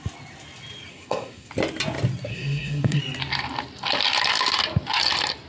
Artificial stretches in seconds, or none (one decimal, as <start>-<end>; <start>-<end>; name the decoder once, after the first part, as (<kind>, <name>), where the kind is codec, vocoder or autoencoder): 0.9-1.5 (codec, SNAC); 2.3-3.0